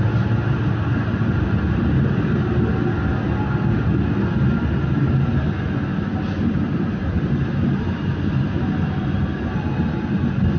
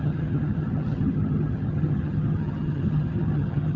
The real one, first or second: first